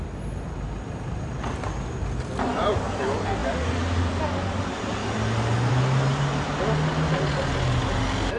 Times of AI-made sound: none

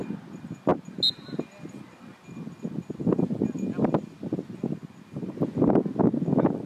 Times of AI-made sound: none